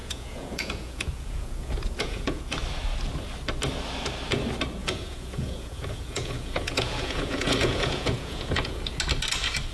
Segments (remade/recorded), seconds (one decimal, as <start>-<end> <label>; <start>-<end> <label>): 0.0-2.4 remade; 2.4-4.8 recorded; 4.8-9.0 remade; 9.0-9.7 recorded